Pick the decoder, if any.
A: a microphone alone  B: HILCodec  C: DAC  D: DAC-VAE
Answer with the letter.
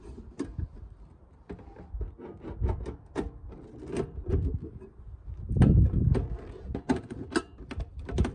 A